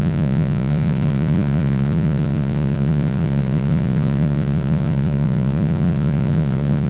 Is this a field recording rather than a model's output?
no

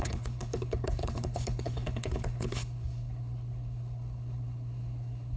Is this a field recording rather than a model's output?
no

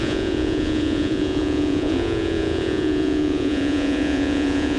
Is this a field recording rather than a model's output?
no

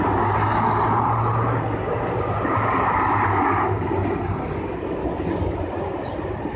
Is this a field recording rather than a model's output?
yes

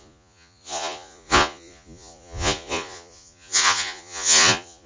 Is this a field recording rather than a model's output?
no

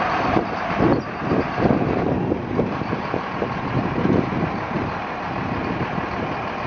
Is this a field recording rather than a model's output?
no